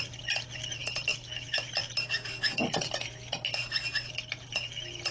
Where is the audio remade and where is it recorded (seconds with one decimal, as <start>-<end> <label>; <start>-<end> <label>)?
0.0-5.1 recorded